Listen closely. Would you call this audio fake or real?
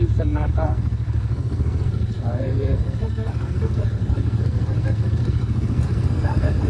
fake